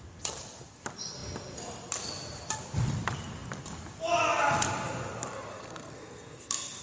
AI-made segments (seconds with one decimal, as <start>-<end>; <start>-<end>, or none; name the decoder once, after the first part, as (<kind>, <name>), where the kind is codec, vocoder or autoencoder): 5.5-6.8 (codec, SNAC)